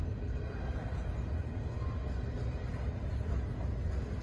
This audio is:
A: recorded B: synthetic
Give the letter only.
A